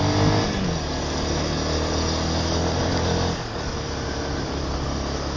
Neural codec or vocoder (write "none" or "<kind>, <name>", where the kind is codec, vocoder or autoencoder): none